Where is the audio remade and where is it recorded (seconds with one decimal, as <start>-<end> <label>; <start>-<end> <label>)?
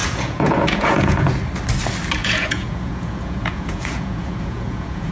0.0-1.4 remade; 1.4-2.2 recorded; 2.2-5.1 remade